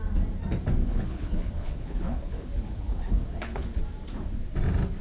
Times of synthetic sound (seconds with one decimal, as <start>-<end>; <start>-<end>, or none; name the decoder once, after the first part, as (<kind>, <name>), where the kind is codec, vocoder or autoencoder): 0.8-3.8 (codec, HILCodec)